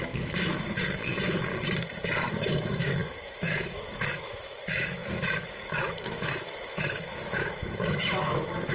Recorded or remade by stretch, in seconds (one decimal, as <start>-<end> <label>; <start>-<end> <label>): 0.0-1.5 remade; 1.5-2.3 recorded; 2.3-8.7 remade